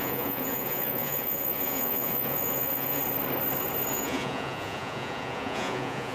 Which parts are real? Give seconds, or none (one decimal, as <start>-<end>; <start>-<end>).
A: 3.0-3.9